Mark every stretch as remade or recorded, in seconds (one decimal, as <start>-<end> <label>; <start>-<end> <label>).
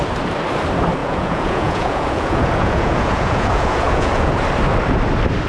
0.0-1.0 recorded; 1.0-4.3 remade; 4.3-5.5 recorded